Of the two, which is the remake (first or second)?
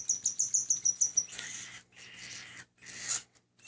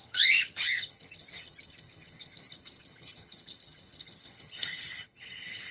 second